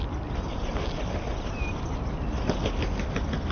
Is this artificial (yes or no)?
no